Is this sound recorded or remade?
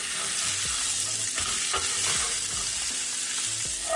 recorded